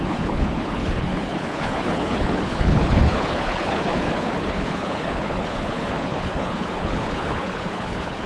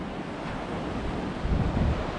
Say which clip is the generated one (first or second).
first